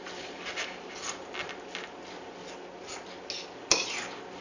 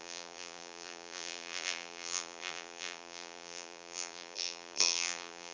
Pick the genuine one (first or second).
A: first